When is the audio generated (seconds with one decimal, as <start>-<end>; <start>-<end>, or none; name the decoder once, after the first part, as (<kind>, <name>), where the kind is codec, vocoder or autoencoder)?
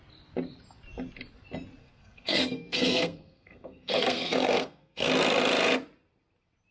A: 1.8-5.1 (codec, SNAC)